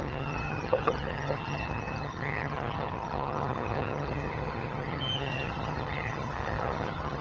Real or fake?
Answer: fake